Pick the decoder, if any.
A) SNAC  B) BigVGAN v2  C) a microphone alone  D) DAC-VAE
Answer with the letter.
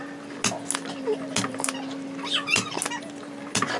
C